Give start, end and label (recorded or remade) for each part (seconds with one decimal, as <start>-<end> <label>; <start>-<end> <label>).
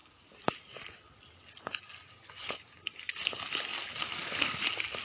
0.0-5.0 recorded